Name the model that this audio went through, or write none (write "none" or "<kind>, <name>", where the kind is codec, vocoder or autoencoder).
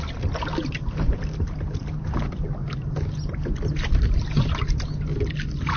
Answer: none